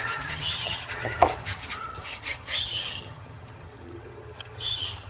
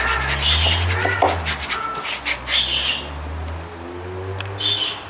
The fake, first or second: first